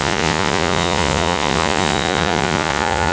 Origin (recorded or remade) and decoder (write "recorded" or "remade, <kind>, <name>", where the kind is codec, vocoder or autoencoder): remade, vocoder, Vocos